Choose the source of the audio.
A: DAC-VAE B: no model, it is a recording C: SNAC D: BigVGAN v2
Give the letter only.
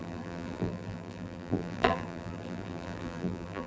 D